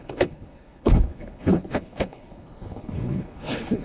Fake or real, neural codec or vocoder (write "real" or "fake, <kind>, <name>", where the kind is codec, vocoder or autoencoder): fake, codec, HILCodec